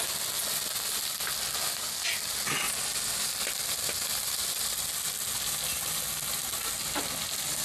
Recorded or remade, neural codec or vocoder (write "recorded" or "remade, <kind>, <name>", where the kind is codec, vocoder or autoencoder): recorded